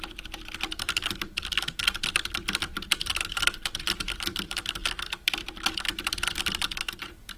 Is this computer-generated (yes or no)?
no